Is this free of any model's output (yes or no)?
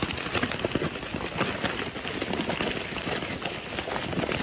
yes